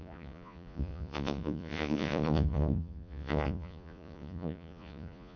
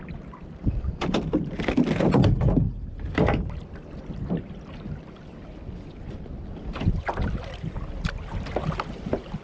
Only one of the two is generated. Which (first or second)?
first